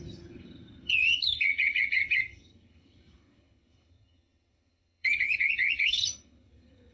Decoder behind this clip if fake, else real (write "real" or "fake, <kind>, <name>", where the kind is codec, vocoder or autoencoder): fake, vocoder, HiFi-GAN